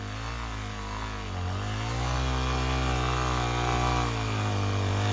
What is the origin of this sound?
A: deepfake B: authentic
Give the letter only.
B